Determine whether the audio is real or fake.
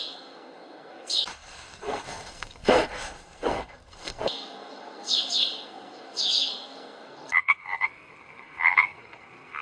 fake